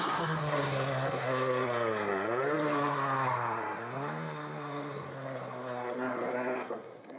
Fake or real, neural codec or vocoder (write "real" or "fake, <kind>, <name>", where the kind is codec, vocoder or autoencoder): fake, codec, SNAC